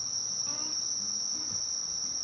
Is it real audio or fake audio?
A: real